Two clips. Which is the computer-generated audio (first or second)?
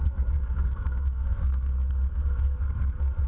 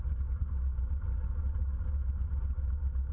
first